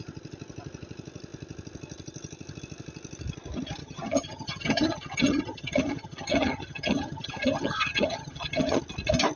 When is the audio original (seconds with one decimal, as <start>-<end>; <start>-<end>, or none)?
0.0-3.8; 8.8-9.4